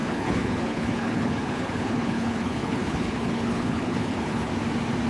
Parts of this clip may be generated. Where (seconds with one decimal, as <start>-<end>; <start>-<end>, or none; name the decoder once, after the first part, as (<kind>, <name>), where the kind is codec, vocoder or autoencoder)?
0.0-4.5 (codec, HILCodec)